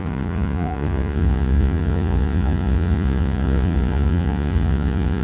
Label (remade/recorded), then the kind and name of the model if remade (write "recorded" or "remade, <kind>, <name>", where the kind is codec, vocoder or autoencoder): remade, vocoder, Vocos